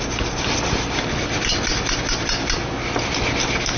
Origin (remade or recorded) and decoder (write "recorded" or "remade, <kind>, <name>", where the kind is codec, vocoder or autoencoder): recorded